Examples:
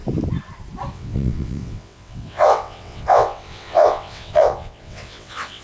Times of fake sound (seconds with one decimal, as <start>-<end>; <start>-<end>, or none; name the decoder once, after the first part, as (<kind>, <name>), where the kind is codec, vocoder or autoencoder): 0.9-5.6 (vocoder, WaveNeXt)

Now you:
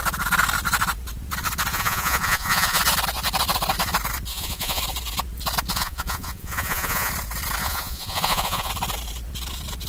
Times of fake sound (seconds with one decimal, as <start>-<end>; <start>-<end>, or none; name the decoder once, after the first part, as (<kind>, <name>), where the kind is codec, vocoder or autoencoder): 1.7-2.8 (vocoder, Vocos); 4.3-4.8; 5.7-7.1; 7.6-8.7

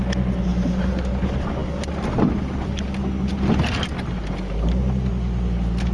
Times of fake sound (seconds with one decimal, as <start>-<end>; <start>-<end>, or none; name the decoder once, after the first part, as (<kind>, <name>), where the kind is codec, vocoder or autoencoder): 0.5-1.1 (vocoder, BigVGAN v2)